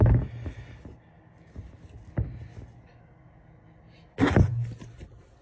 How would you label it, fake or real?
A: real